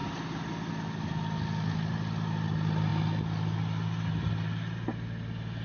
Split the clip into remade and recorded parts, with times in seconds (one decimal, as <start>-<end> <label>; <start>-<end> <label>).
0.0-5.6 recorded